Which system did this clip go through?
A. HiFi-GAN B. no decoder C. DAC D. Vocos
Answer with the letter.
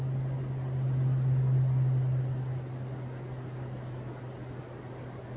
B